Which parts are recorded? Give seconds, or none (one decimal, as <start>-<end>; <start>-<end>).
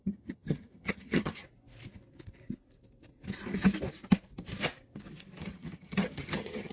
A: 1.4-5.4